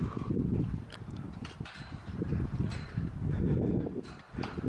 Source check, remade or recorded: recorded